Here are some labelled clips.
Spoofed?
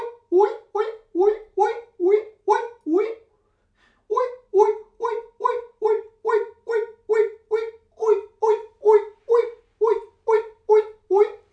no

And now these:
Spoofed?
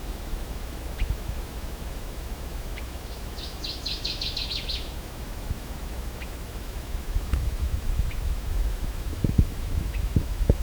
yes